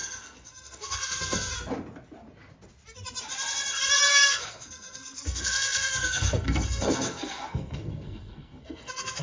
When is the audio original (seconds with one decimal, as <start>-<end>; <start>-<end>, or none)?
1.5-4.1